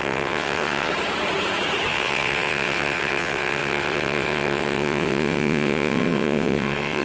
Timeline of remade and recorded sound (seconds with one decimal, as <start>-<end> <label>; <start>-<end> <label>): 0.0-0.9 remade; 0.9-1.9 recorded; 1.9-7.0 remade